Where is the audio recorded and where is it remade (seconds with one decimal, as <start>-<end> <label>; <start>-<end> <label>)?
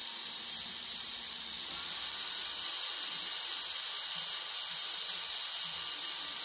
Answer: 0.0-1.7 remade; 1.7-4.8 recorded; 4.8-5.5 remade; 5.5-6.4 recorded